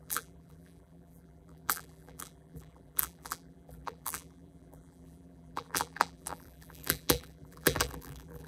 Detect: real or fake fake